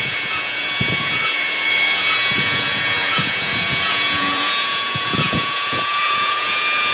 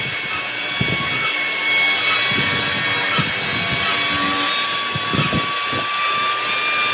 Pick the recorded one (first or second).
second